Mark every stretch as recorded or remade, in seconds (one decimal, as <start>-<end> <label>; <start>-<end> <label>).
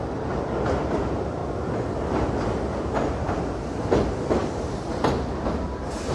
0.0-6.1 recorded